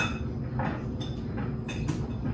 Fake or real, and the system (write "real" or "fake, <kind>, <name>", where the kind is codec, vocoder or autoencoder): real